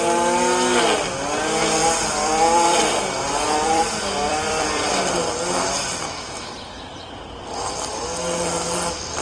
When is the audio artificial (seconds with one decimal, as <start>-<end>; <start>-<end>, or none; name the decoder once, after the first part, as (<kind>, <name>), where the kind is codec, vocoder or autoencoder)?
1.8-5.1 (vocoder, BigVGAN v2)